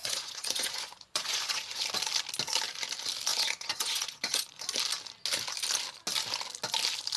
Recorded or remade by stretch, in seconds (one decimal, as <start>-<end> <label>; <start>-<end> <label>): 0.0-1.8 remade; 1.8-3.3 recorded; 3.3-4.6 remade; 4.6-7.2 recorded